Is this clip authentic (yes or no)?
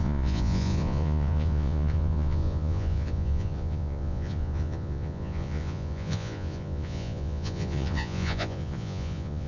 no